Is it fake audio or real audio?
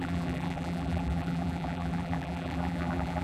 fake